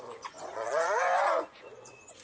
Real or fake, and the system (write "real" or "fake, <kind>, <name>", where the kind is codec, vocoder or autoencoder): fake, vocoder, Vocos